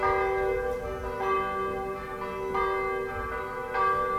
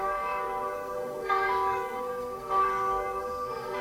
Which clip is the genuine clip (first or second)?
first